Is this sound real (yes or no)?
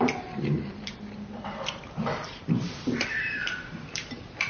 no